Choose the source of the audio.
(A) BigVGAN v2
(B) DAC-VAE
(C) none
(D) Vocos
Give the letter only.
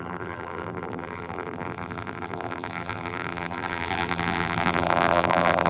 A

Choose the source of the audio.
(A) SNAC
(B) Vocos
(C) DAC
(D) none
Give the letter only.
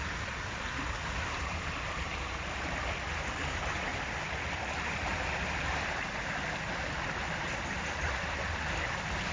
D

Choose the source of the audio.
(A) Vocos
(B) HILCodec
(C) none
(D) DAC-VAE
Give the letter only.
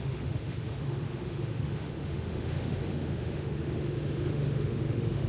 D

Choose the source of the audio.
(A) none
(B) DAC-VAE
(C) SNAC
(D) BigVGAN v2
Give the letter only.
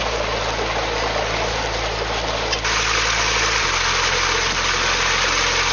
A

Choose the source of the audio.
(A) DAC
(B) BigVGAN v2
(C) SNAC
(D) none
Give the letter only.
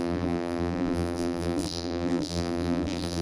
B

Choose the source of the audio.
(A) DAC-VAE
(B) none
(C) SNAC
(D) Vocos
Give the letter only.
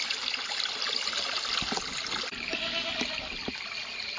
B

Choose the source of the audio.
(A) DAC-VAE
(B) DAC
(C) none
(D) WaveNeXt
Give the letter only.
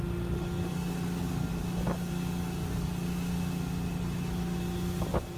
C